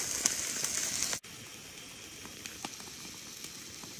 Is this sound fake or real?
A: real